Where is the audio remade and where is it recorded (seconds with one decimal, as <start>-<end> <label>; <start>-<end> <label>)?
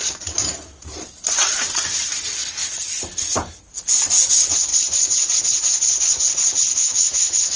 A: 0.0-6.7 recorded; 6.7-7.6 remade